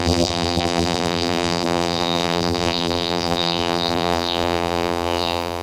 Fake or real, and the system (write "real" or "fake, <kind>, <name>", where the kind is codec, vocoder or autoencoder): fake, vocoder, BigVGAN v2